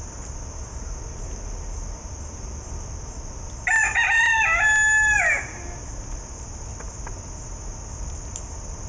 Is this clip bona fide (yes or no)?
yes